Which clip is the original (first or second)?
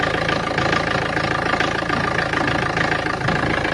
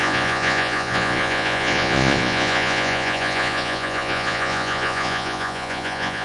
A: first